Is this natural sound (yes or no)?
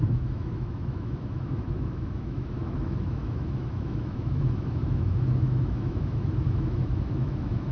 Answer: no